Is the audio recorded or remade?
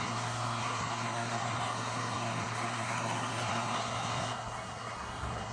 remade